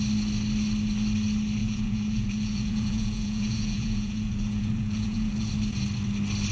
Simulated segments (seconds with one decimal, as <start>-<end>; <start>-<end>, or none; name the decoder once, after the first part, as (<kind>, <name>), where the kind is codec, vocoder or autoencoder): 1.6-5.5 (vocoder, Vocos)